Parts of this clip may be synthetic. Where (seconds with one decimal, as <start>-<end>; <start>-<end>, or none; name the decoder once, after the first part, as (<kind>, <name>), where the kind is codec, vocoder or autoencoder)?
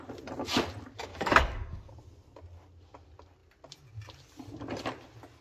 1.1-1.9 (codec, DAC)